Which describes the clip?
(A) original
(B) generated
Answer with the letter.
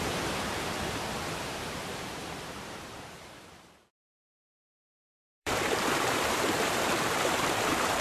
B